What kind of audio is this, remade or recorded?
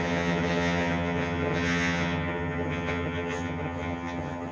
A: remade